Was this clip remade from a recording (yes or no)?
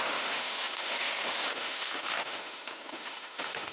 yes